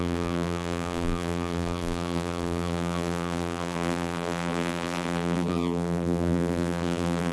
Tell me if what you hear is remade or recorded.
remade